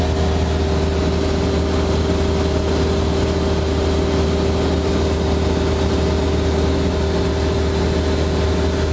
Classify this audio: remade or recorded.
recorded